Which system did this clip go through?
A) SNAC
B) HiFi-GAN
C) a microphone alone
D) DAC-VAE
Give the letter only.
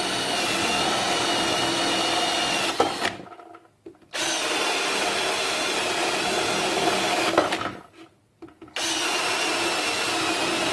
C